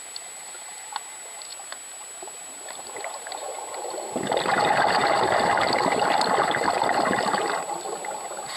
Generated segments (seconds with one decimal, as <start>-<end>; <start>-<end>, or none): none